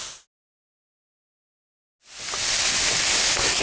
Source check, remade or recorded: recorded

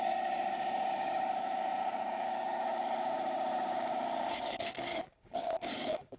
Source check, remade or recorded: remade